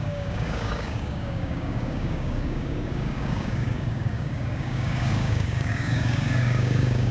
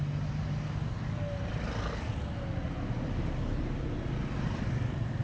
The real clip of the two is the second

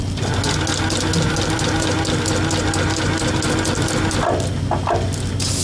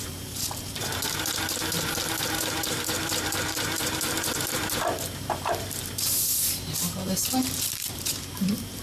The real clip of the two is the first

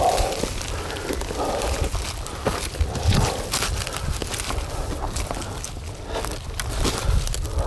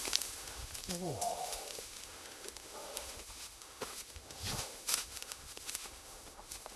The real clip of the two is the first